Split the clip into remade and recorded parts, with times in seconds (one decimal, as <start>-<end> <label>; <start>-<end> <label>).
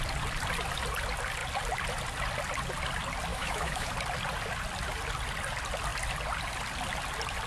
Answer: 0.0-3.3 recorded; 3.3-3.9 remade; 3.9-7.5 recorded